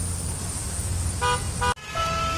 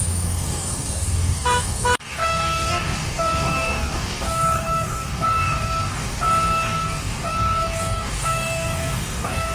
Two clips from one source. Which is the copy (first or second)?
second